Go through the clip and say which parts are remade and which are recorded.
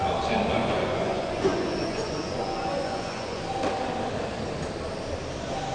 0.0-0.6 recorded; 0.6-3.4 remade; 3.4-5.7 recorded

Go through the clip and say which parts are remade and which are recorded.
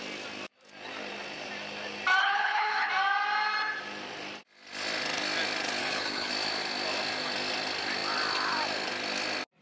0.0-2.2 recorded; 2.2-2.9 remade; 2.9-5.8 recorded; 5.8-6.3 remade; 6.3-9.6 recorded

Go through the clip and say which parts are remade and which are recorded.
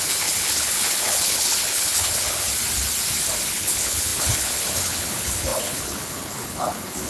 0.0-2.5 remade; 2.5-3.5 recorded; 3.5-7.1 remade